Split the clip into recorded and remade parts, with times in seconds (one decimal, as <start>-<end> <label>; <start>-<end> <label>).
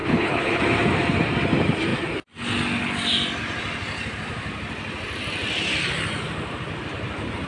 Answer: 0.0-0.6 remade; 0.6-7.5 recorded